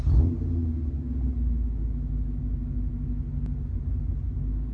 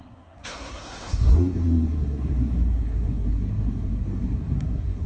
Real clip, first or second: first